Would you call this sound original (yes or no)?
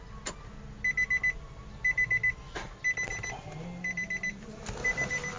yes